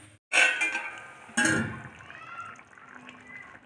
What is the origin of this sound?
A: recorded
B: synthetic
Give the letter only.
A